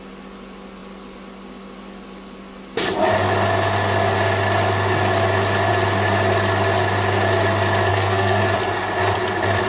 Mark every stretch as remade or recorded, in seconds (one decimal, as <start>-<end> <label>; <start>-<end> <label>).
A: 0.0-7.9 recorded; 7.9-8.4 remade; 8.4-9.7 recorded